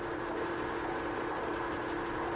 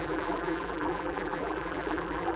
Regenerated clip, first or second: second